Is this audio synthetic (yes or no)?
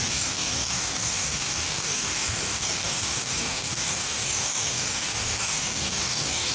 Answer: yes